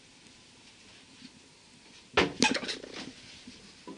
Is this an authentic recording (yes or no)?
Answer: yes